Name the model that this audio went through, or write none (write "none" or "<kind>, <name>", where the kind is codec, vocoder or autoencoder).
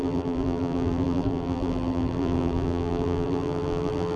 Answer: vocoder, BigVGAN v2